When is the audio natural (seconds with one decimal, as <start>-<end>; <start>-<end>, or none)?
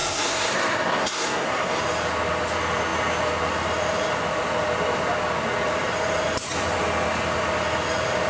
1.8-8.3